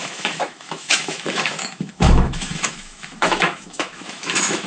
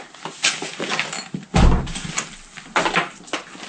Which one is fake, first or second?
first